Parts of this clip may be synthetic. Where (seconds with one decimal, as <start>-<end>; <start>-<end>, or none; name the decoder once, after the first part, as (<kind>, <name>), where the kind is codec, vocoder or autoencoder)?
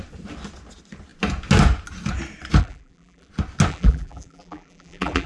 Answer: 2.6-3.3 (vocoder, BigVGAN v2); 3.7-5.3